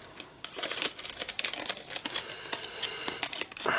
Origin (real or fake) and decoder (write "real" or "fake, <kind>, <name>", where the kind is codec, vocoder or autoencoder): real